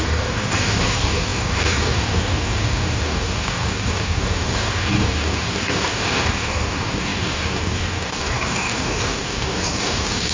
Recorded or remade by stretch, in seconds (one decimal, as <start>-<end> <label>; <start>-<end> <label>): 0.0-10.3 remade